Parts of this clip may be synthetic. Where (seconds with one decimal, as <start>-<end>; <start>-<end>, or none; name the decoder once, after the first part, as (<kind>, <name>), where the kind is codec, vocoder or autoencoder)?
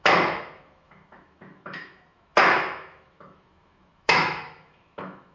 0.0-5.3 (autoencoder, DAC-VAE)